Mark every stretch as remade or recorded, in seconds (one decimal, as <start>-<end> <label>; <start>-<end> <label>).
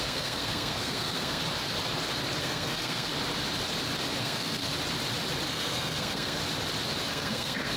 0.0-1.4 remade; 1.4-2.4 recorded; 2.4-3.1 remade; 3.1-4.2 recorded; 4.2-4.7 remade; 4.7-5.5 recorded; 5.5-6.4 remade; 6.4-7.1 recorded; 7.1-7.8 remade